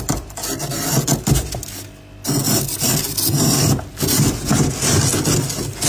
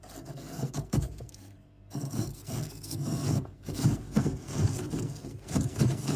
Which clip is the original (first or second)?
first